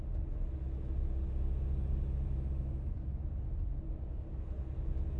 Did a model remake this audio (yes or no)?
no